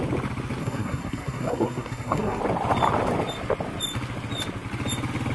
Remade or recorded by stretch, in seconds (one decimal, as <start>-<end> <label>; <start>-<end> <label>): 0.0-0.6 recorded; 0.6-2.4 remade; 2.4-5.3 recorded